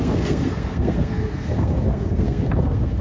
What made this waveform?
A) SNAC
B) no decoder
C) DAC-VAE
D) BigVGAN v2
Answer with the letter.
A